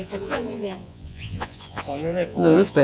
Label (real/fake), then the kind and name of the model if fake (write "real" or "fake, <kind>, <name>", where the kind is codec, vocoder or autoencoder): fake, vocoder, Vocos